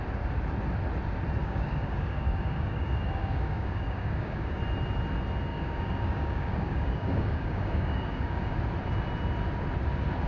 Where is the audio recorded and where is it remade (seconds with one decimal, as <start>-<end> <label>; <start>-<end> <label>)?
0.0-1.4 recorded; 1.4-4.6 remade; 4.6-5.5 recorded; 5.5-8.5 remade; 8.5-10.3 recorded